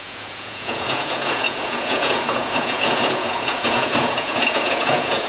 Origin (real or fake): fake